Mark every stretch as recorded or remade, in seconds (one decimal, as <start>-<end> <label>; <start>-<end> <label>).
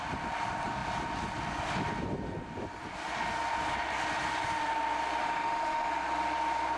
0.0-5.2 recorded; 5.2-5.9 remade; 5.9-6.8 recorded